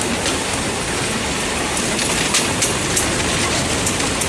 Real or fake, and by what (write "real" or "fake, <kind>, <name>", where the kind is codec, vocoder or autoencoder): real